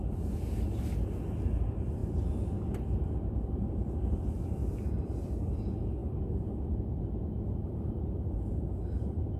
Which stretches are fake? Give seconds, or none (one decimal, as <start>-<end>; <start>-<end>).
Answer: 7.6-8.6